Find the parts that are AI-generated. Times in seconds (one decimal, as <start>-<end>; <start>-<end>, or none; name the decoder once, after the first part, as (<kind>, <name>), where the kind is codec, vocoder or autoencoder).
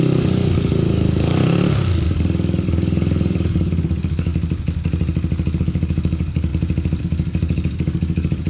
0.0-1.4 (codec, DAC); 2.1-4.3; 5.6-6.5; 7.0-8.5